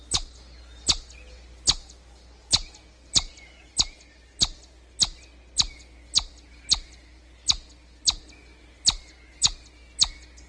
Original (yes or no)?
yes